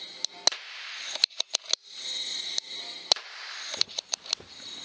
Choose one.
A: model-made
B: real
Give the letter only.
B